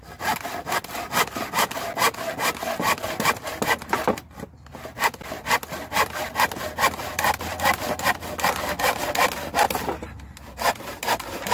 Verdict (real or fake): real